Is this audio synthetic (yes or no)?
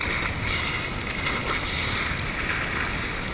no